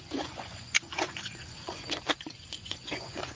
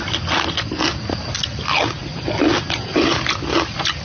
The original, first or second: second